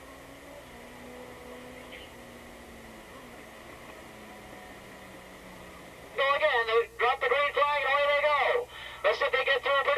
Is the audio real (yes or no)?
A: yes